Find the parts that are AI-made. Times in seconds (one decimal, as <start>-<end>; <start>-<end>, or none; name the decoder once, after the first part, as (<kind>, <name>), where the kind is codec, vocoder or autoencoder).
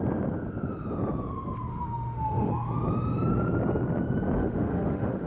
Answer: 1.7-2.5 (autoencoder, DAC-VAE); 4.4-5.3